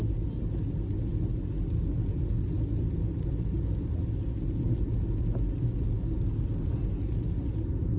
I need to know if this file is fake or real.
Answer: real